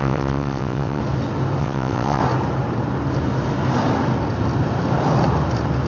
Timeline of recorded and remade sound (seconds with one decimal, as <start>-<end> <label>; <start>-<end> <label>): 0.0-1.0 remade; 1.0-1.6 recorded; 1.6-2.2 remade; 2.2-5.9 recorded